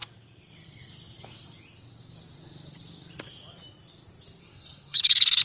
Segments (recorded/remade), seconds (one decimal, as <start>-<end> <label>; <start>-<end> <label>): 0.0-4.4 recorded; 4.4-5.4 remade